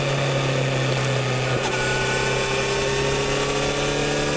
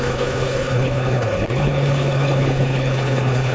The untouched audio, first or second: first